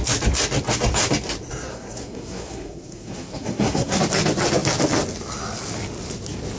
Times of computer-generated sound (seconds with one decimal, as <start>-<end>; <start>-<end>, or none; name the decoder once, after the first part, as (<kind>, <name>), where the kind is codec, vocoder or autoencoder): 1.7-4.0 (codec, SNAC)